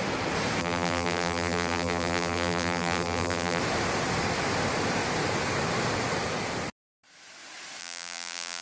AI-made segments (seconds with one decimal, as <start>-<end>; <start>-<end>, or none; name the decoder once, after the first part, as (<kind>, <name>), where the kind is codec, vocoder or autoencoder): 0.6-3.6 (vocoder, BigVGAN v2); 7.8-8.6